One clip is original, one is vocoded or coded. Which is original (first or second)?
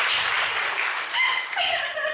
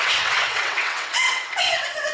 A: first